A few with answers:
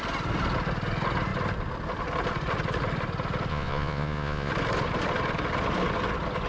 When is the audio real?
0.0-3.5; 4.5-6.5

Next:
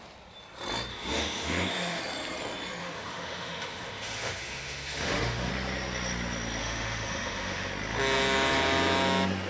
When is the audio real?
0.0-0.9; 2.0-2.8; 5.5-6.6; 7.7-9.5

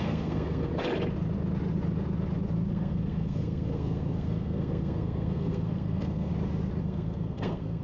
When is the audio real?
0.7-2.7; 6.3-6.8

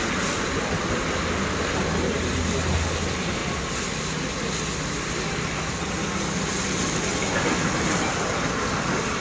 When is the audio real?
0.0-9.2

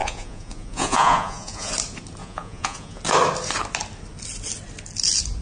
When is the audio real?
1.7-2.2; 3.0-5.4